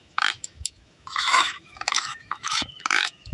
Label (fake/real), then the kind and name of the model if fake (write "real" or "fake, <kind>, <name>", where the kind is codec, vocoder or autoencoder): fake, autoencoder, DAC-VAE